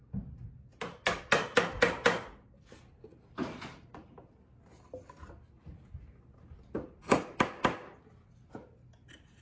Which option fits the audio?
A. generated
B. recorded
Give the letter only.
B